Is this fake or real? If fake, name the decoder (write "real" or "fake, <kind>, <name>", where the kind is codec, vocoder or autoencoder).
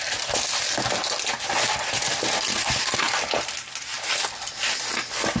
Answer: real